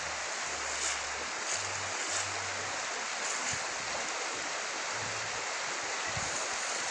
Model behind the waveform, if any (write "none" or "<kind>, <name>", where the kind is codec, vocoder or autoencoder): none